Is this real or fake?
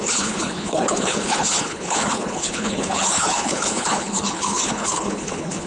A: fake